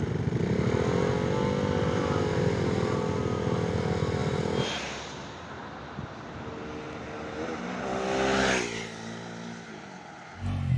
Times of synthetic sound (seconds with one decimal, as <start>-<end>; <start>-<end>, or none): none